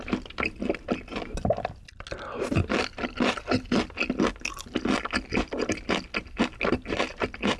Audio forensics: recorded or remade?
recorded